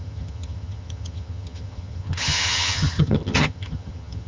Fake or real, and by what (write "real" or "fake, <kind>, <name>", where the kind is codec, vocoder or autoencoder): fake, vocoder, HiFi-GAN